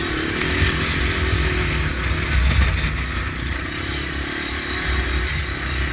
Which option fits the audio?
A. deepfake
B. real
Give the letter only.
B